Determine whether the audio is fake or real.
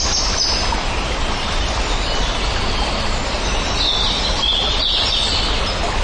real